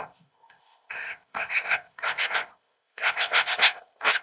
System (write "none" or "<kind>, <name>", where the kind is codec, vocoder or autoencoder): codec, ZipCodec